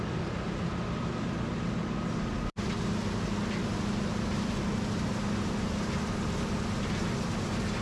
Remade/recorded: recorded